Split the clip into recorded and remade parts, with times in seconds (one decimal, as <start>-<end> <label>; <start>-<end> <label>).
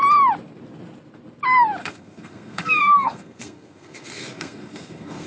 0.0-1.8 recorded; 1.8-5.3 remade